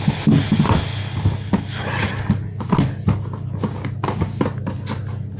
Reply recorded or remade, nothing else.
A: recorded